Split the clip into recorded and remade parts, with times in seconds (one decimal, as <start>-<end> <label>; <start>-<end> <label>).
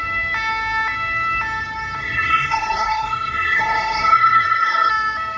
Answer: 0.0-2.0 recorded; 2.0-4.9 remade; 4.9-5.4 recorded